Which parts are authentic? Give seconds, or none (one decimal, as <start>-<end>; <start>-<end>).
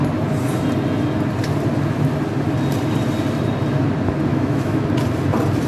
0.0-4.3; 4.9-5.7